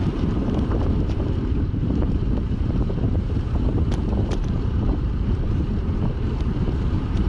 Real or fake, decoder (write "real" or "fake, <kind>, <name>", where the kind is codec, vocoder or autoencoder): fake, vocoder, BigVGAN v2